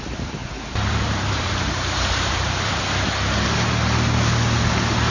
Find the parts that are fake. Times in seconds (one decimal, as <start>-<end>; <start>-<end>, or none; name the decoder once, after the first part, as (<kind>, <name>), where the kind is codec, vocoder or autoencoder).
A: 0.4-2.8 (vocoder, BigVGAN v2)